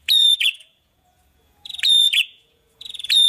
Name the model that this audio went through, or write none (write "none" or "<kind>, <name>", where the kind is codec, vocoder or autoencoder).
vocoder, Vocos